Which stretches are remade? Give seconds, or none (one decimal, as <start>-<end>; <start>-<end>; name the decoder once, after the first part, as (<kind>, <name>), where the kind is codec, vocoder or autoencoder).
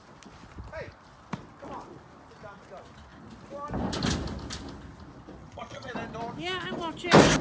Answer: 5.4-5.9 (vocoder, HiFi-GAN)